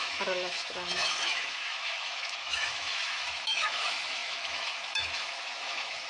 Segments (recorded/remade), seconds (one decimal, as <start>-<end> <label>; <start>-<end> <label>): 0.0-6.1 remade